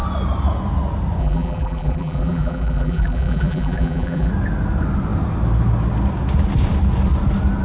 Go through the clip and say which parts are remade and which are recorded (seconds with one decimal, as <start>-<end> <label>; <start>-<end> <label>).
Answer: 0.0-1.2 recorded; 1.2-4.3 remade; 4.3-7.6 recorded